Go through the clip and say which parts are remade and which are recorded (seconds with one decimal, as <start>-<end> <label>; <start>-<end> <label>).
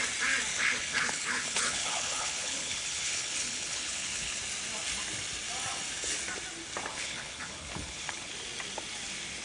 0.0-0.5 recorded; 0.5-4.4 remade; 4.4-6.9 recorded; 6.9-8.3 remade; 8.3-9.4 recorded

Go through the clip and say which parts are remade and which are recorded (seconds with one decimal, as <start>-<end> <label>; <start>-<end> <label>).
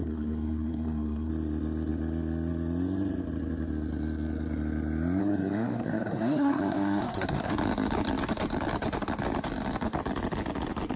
0.0-1.3 remade; 1.3-5.2 recorded; 5.2-7.5 remade; 7.5-11.0 recorded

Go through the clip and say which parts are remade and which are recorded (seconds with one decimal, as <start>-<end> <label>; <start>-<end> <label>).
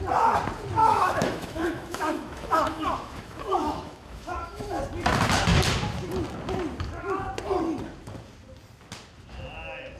0.0-0.8 recorded; 0.8-4.8 remade; 4.8-10.0 recorded